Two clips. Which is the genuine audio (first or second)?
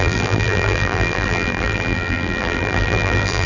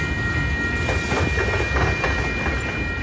second